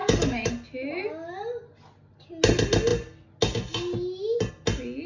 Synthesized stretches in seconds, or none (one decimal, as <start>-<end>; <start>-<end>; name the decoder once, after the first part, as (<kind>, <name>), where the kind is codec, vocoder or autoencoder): 0.0-0.5 (codec, DAC)

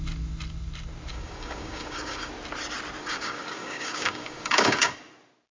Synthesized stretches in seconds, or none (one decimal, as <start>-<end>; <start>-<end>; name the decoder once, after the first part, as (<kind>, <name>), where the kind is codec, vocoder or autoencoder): 1.1-2.3 (codec, DAC); 3.0-4.9